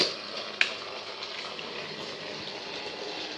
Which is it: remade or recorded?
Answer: recorded